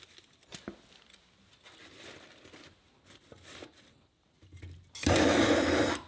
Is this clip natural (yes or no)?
yes